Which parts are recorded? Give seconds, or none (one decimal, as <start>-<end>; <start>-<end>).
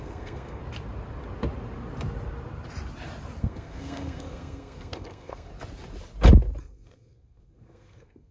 0.6-3.4; 5.5-6.6